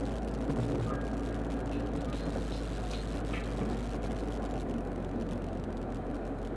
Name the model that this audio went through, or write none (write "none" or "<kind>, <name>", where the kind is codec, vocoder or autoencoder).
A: none